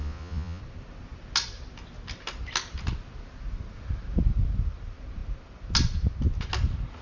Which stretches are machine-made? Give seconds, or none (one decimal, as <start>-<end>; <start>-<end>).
0.0-0.6